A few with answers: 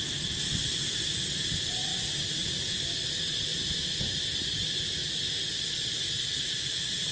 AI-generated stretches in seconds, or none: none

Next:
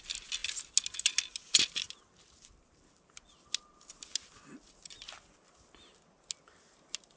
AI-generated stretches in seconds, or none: none

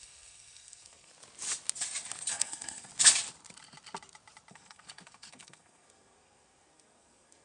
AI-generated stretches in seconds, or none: 0.0-1.1; 2.3-2.9; 4.5-7.4

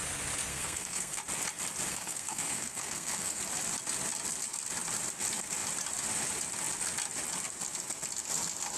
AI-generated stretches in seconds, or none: 0.5-1.2; 1.9-3.4

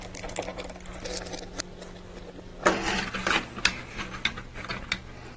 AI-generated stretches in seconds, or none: none

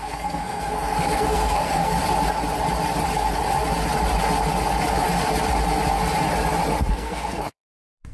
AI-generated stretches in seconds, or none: 0.0-2.0; 6.9-8.1

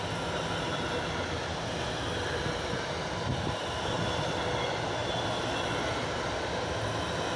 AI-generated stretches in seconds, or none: none